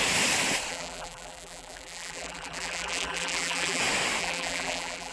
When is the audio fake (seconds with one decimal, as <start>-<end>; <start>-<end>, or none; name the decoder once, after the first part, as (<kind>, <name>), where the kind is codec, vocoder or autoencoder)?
0.7-3.8 (vocoder, BigVGAN v2); 4.2-5.1